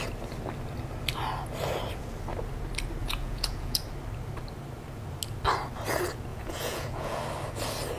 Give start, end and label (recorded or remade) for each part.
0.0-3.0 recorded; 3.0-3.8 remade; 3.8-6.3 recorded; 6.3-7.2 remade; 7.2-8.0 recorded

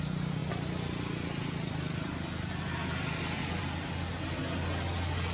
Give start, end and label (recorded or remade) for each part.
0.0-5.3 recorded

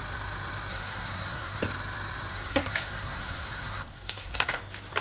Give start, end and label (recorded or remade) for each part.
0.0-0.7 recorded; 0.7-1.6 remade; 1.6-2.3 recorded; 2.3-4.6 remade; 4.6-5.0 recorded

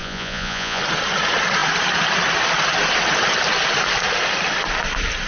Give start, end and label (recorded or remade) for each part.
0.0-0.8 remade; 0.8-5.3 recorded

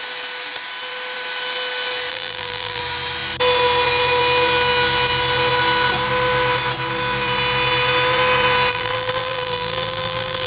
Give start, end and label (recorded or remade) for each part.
0.0-2.1 recorded; 2.1-2.8 remade; 2.8-8.7 recorded; 8.7-10.5 remade

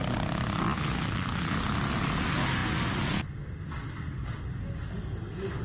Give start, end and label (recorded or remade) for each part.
0.0-5.6 recorded

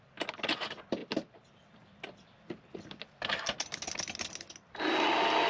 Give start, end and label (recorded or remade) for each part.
0.0-5.5 recorded

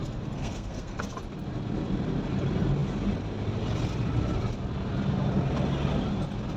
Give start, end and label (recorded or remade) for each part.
0.0-1.0 remade; 1.0-6.6 recorded